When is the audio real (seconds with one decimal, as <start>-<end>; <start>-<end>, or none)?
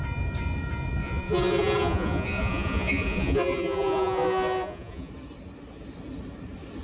0.0-1.0; 5.1-6.8